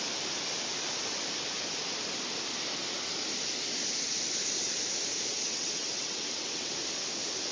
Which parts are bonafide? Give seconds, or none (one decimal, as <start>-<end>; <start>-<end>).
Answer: 0.0-5.3; 6.7-7.5